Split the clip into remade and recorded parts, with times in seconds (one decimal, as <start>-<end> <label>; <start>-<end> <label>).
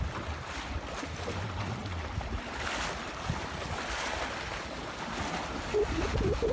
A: 0.0-6.5 recorded